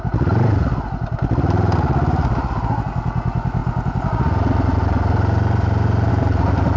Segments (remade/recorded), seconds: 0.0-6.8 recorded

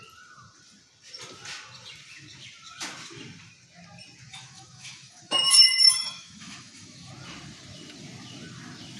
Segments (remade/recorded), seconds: 0.0-4.3 recorded; 4.3-7.1 remade; 7.1-9.0 recorded

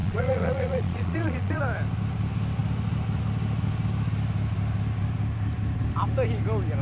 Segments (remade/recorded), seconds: 0.0-1.6 remade; 1.6-6.8 recorded

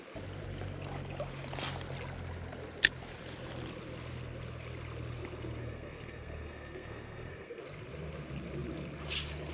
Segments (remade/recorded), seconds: 0.0-5.6 recorded; 5.6-7.6 remade; 7.6-9.5 recorded

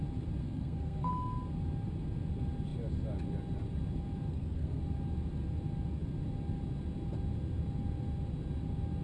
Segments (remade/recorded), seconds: 0.0-0.4 recorded; 0.4-1.1 remade; 1.1-4.3 recorded; 4.3-4.8 remade; 4.8-9.0 recorded

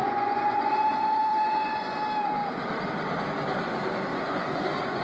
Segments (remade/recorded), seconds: 0.0-2.0 remade; 2.0-4.1 recorded; 4.1-5.0 remade